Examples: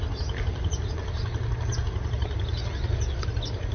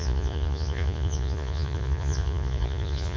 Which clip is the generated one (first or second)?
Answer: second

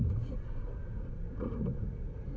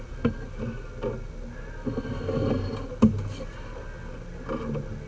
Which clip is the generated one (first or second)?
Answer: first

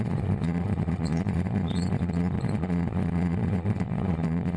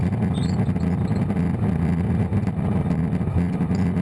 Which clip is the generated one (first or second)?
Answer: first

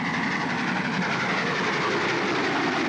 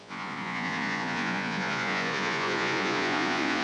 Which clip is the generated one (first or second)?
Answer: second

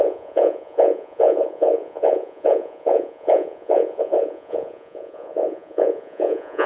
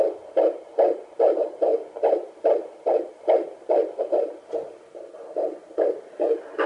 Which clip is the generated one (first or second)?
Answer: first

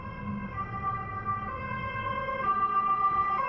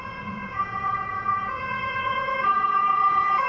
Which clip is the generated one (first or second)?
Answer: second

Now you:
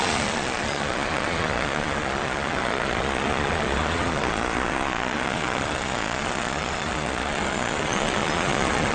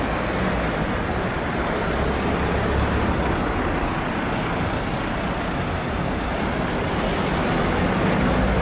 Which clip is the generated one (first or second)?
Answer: first